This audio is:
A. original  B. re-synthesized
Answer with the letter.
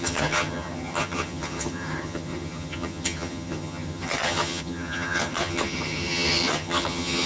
B